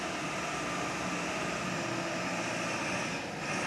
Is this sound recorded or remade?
recorded